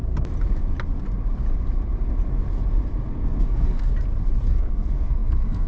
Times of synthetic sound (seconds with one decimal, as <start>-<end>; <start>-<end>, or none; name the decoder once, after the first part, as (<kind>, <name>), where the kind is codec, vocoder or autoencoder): 3.4-3.9 (codec, SNAC); 4.5-5.7